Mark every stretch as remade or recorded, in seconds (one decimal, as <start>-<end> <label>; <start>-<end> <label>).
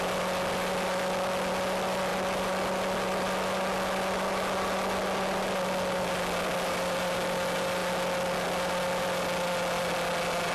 0.0-10.5 recorded